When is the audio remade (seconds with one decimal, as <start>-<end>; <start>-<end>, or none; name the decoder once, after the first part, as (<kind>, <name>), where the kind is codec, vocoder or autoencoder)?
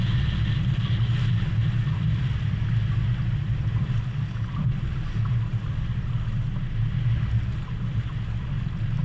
none